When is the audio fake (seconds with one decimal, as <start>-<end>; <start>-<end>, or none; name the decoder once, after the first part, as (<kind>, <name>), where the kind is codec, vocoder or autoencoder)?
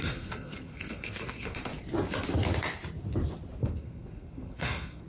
0.0-1.7 (codec, SNAC); 3.6-5.1